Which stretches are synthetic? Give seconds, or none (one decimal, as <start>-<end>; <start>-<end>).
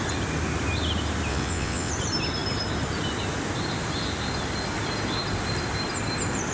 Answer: 1.3-1.9